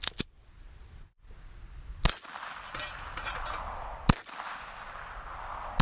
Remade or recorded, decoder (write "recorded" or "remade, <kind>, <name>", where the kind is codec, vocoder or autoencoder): recorded